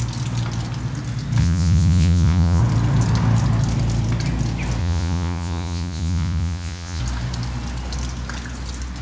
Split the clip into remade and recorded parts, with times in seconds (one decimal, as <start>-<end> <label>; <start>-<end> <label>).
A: 0.0-1.4 recorded; 1.4-2.6 remade; 2.6-4.8 recorded; 4.8-7.0 remade; 7.0-9.0 recorded